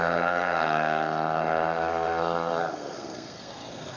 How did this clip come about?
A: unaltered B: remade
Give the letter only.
B